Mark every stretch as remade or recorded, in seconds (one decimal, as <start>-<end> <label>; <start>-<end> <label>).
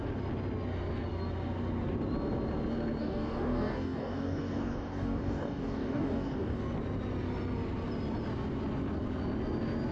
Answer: 0.0-3.0 recorded; 3.0-6.6 remade; 6.6-9.9 recorded